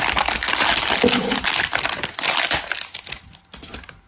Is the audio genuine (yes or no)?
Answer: yes